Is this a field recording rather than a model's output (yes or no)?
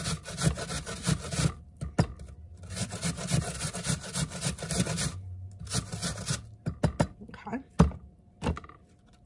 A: yes